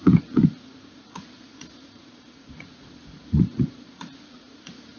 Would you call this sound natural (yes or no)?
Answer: no